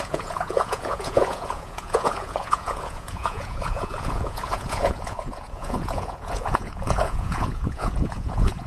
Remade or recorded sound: remade